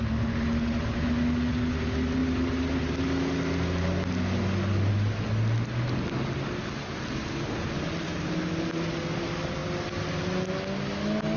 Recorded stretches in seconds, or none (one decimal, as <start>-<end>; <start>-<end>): 0.0-11.4